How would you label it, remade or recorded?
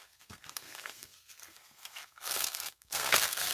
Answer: remade